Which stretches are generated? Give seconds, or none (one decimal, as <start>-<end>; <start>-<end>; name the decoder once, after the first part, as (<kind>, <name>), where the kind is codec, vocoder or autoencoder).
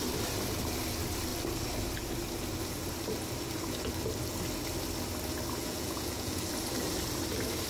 5.6-6.4 (vocoder, Vocos)